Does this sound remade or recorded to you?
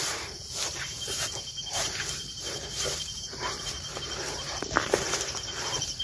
remade